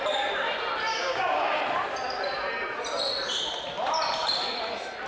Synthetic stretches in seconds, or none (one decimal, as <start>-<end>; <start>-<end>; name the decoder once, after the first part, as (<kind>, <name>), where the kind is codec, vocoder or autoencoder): 0.9-1.6 (codec, DAC)

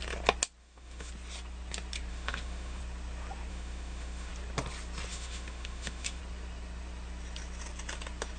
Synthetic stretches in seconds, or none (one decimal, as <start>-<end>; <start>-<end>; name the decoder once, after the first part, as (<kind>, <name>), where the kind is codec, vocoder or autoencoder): 0.6-1.1 (autoencoder, DAC-VAE); 2.1-2.8; 3.5-4.3; 5.1-6.2

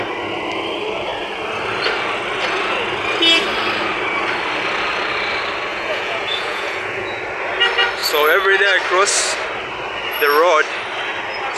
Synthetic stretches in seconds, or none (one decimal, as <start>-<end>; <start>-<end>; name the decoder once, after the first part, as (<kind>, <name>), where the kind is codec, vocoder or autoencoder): 5.7-7.2 (vocoder, Vocos)

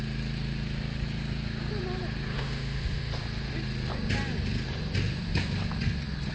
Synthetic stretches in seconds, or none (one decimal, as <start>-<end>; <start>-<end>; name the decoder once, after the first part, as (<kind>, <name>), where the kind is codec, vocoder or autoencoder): 2.3-3.1 (autoencoder, DAC-VAE)

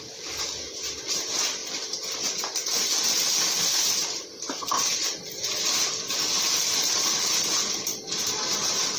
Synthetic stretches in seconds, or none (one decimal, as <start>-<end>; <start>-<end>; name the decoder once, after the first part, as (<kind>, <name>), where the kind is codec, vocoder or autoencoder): 1.6-3.9 (vocoder, BigVGAN v2); 5.0-5.7; 7.9-9.0